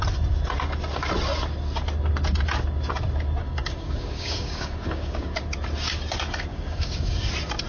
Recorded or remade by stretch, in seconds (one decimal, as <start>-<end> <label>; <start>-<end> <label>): 0.0-3.4 recorded; 3.4-5.4 remade; 5.4-6.5 recorded; 6.5-7.3 remade; 7.3-7.7 recorded